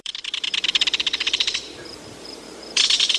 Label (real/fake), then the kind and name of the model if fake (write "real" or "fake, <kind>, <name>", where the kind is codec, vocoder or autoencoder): fake, vocoder, BigVGAN v2